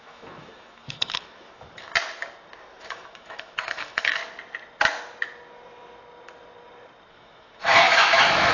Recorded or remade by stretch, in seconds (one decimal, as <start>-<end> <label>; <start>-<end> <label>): 0.0-1.9 remade; 1.9-2.8 recorded; 2.8-4.2 remade; 4.2-7.1 recorded; 7.1-8.5 remade